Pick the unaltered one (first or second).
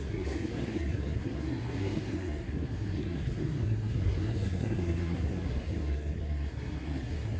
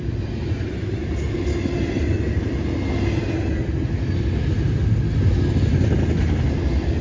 second